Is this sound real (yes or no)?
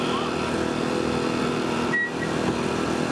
yes